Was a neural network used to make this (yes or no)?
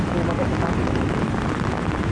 no